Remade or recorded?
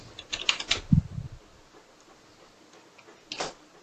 recorded